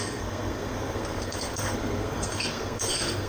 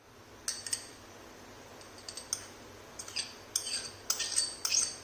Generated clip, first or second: first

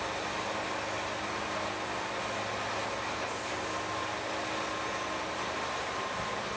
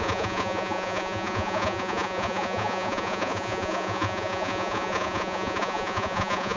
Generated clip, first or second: second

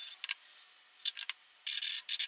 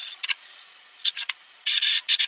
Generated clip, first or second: second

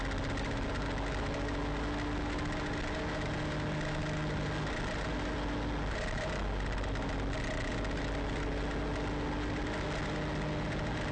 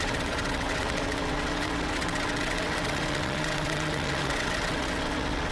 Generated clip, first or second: second